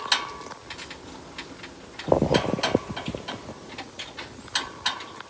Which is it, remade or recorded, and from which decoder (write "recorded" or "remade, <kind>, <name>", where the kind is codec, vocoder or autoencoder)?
recorded